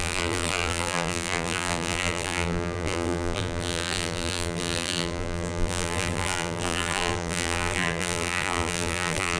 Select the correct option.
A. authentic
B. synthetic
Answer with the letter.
B